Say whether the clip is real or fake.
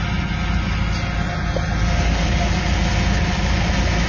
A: real